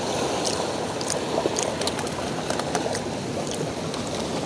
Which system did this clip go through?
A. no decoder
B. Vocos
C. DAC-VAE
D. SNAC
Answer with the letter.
A